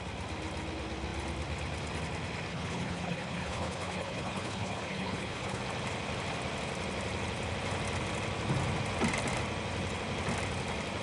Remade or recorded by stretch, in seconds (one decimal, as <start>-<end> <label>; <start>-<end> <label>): 0.0-2.5 recorded; 2.5-5.6 remade; 5.6-11.0 recorded